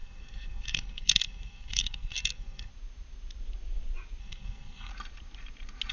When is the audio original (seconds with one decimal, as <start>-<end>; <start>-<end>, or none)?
2.7-4.2; 4.9-5.9